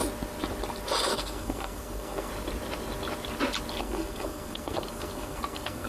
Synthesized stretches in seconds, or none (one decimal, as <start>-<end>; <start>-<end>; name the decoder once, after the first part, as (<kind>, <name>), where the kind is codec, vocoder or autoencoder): 1.1-2.3 (codec, SNAC); 3.8-5.9

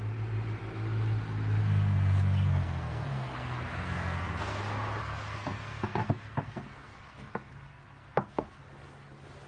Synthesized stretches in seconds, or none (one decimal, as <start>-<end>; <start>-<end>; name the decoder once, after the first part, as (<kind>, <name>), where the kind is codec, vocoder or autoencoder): 1.6-4.6 (codec, SNAC); 5.0-8.6

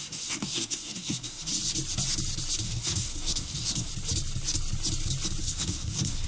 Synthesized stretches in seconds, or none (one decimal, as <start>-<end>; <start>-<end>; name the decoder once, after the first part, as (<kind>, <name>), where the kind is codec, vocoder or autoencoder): 0.0-1.5 (codec, SNAC); 2.6-3.9; 5.4-6.3

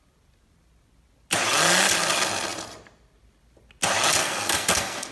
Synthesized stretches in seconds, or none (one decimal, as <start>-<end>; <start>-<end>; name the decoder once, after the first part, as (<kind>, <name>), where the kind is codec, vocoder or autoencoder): 4.2-5.1 (codec, SNAC)

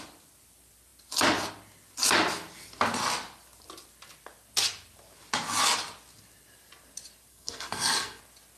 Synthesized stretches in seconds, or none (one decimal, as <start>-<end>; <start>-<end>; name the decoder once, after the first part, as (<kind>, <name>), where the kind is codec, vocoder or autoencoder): 7.3-8.2 (codec, SNAC)

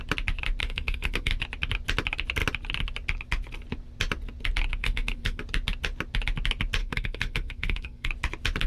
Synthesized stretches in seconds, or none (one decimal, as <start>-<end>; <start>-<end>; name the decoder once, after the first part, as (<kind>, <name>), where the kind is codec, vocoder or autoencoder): 0.6-1.3 (codec, SNAC); 4.8-5.4; 6.8-8.1

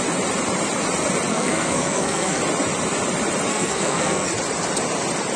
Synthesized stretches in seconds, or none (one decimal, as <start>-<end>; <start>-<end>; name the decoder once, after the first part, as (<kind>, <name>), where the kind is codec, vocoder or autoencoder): 1.3-2.4 (codec, SNAC); 3.5-4.3